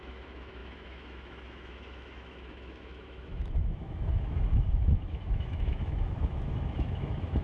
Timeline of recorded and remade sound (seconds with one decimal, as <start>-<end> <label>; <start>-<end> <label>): 0.0-7.4 remade